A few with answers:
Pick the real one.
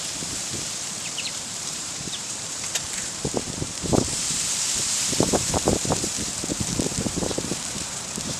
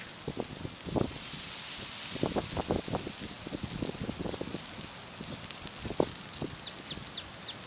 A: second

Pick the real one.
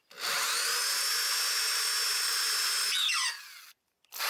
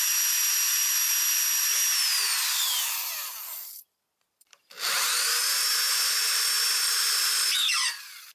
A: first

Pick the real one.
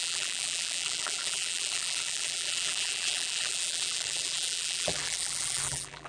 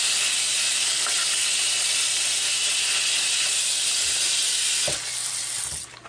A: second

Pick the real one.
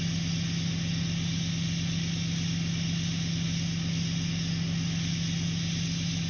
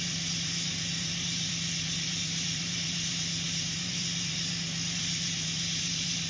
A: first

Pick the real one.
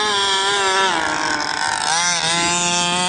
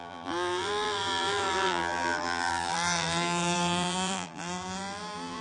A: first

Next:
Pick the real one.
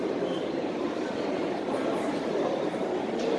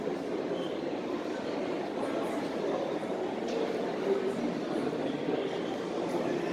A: second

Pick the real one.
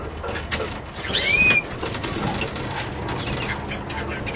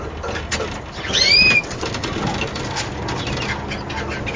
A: first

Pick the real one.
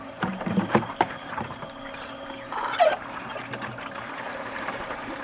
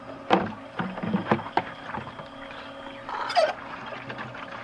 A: second